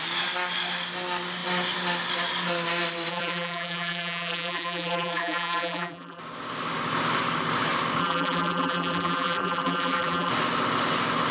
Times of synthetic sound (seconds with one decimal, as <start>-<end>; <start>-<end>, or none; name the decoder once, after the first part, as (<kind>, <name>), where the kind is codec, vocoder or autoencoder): 3.1-6.2 (vocoder, BigVGAN v2); 8.0-10.3